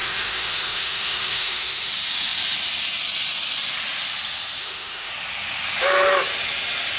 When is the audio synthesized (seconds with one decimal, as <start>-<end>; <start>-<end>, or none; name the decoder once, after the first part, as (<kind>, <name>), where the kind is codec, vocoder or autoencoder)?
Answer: 0.0-1.9 (autoencoder, DAC-VAE); 4.6-5.1